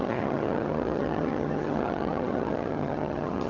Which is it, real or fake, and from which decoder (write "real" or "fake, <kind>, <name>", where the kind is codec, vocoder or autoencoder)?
fake, vocoder, HiFi-GAN